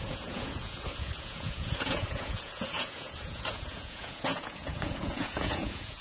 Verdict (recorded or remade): remade